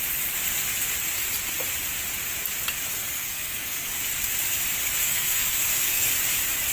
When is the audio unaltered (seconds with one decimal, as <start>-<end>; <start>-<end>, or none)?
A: 0.0-2.9; 3.9-5.0; 6.1-6.7